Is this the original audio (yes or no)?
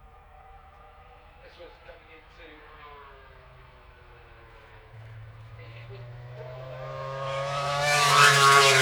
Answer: no